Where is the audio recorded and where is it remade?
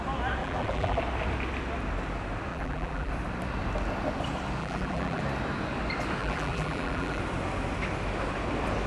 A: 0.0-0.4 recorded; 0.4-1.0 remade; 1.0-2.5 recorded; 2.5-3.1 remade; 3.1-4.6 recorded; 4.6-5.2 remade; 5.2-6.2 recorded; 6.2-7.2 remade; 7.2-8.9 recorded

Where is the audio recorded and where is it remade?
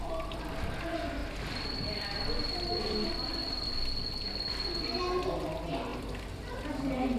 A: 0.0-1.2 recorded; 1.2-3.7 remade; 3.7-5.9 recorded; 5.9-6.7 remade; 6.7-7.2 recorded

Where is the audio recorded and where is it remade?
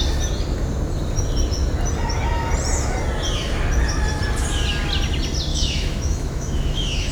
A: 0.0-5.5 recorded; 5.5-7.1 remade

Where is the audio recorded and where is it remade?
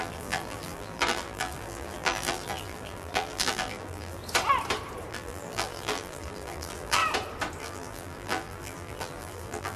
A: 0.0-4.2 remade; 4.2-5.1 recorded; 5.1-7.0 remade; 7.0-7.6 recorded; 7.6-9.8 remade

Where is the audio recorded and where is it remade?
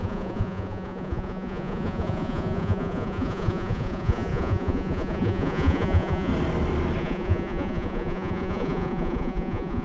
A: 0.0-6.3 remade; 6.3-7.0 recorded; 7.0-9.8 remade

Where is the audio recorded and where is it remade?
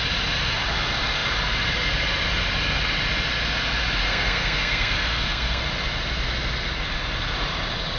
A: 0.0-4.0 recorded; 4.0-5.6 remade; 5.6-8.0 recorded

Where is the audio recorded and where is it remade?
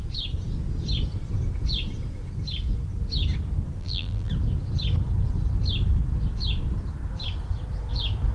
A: 0.0-3.8 recorded; 3.8-4.3 remade; 4.3-8.3 recorded